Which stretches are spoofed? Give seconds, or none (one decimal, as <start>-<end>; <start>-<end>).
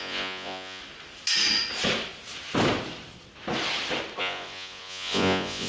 0.0-0.8; 4.2-5.7